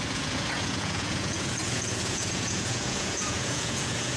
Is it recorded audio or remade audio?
remade